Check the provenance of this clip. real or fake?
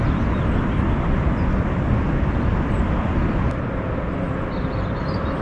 real